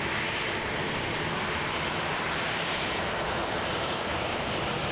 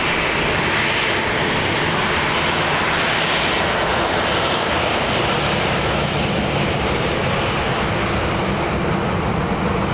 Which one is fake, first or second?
first